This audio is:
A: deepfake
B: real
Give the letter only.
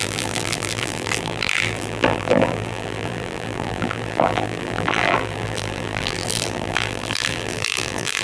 A